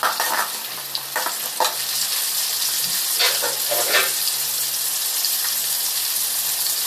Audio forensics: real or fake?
fake